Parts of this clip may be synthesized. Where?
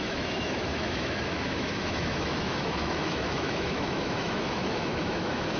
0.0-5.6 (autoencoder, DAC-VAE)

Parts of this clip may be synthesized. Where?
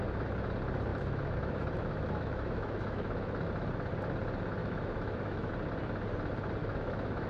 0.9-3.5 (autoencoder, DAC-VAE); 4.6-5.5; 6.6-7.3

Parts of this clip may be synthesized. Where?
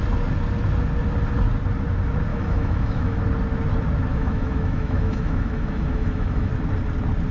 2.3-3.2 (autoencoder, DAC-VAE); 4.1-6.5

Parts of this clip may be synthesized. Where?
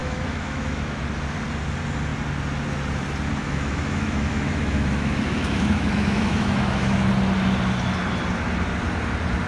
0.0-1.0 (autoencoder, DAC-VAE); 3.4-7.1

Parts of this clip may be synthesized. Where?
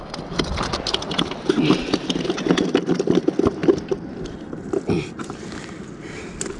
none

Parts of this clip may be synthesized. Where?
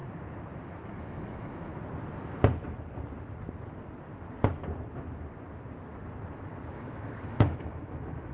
0.6-1.7 (autoencoder, DAC-VAE); 6.7-8.3